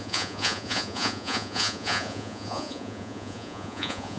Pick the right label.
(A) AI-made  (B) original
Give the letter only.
A